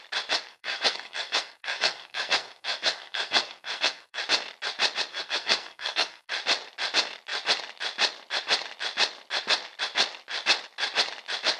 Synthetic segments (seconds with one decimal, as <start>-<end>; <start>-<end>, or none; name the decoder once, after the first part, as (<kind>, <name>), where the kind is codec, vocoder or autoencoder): 0.5-4.2 (codec, SNAC); 5.1-6.3